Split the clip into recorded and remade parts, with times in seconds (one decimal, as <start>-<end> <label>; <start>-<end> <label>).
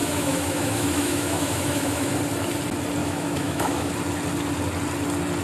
0.0-2.1 remade; 2.1-3.0 recorded; 3.0-3.9 remade; 3.9-5.4 recorded